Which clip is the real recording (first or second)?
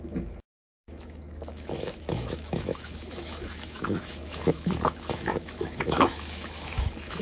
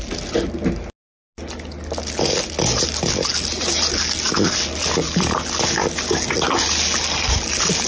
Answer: second